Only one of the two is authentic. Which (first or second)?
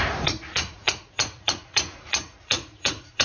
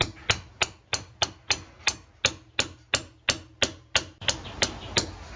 second